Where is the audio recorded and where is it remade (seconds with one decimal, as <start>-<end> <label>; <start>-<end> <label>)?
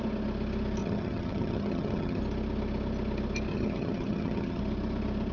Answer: 0.0-0.8 recorded; 0.8-2.2 remade; 2.2-3.5 recorded; 3.5-4.6 remade; 4.6-5.3 recorded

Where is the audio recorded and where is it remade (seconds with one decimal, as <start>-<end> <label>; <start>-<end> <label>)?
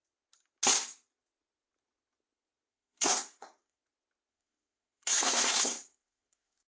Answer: 0.0-2.7 recorded; 2.7-3.8 remade; 3.8-4.3 recorded; 4.3-6.7 remade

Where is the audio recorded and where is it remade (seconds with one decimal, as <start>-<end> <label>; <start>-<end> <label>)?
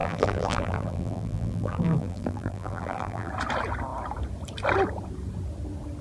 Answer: 0.0-3.3 remade; 3.3-6.0 recorded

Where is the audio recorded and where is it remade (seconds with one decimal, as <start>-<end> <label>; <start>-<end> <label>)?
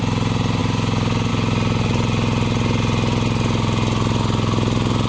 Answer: 0.0-5.1 recorded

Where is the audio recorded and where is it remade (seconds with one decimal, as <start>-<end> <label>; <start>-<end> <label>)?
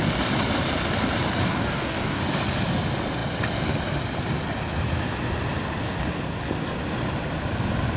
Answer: 0.0-1.5 recorded; 1.5-2.2 remade; 2.2-8.0 recorded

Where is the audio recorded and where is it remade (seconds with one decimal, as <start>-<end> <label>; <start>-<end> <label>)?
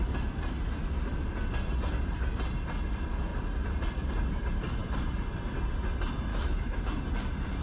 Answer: 0.0-6.3 recorded; 6.3-6.8 remade; 6.8-7.6 recorded